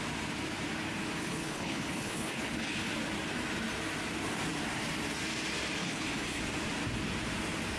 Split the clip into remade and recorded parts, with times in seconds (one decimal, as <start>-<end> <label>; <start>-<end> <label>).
0.0-1.2 recorded; 1.2-2.9 remade; 2.9-5.8 recorded; 5.8-6.4 remade; 6.4-7.8 recorded